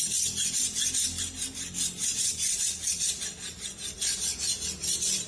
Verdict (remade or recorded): recorded